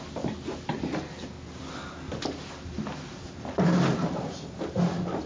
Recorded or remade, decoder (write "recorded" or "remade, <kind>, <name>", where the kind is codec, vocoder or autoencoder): recorded